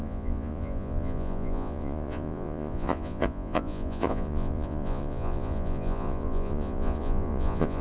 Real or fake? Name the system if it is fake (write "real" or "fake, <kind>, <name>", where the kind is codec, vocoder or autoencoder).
fake, vocoder, Vocos